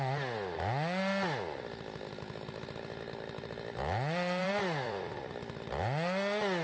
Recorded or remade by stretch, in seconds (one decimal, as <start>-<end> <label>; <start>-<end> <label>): 0.0-4.4 recorded; 4.4-5.1 remade; 5.1-6.6 recorded